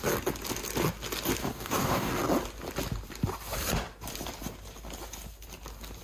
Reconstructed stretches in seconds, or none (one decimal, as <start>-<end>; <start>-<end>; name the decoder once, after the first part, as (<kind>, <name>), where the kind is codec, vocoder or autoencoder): 1.4-2.1 (codec, DAC)

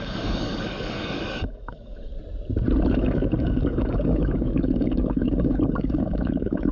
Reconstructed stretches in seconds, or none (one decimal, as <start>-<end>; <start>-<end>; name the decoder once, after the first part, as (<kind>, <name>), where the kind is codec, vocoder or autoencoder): 0.0-2.1 (codec, DAC); 2.9-6.7

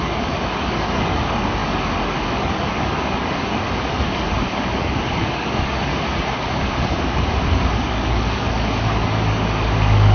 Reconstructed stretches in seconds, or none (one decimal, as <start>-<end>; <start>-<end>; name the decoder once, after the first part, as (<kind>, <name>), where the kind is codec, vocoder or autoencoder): 0.0-5.9 (codec, DAC); 6.4-10.1